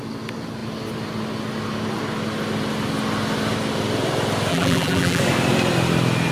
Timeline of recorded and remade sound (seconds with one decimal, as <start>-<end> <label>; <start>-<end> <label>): 0.0-4.5 recorded; 4.5-5.2 remade; 5.2-6.3 recorded